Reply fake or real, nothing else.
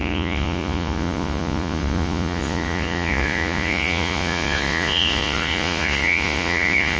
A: fake